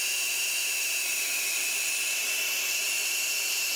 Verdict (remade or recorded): recorded